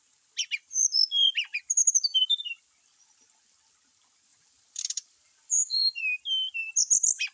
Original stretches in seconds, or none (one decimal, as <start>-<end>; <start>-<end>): 0.0-1.8; 2.4-4.3; 6.0-7.3